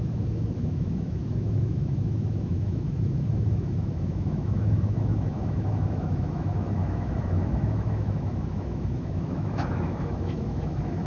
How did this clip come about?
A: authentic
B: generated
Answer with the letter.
B